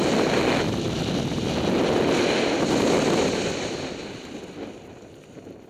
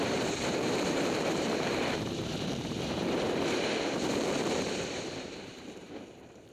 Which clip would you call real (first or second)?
first